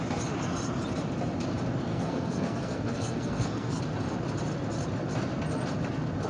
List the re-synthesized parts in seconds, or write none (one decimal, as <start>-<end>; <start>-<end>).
1.9-3.8